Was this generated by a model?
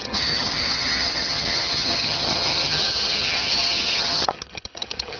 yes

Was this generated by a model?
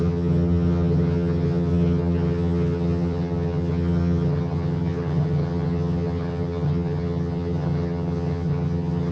yes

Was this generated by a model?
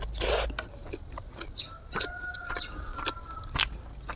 no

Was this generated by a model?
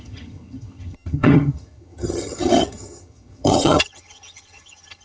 yes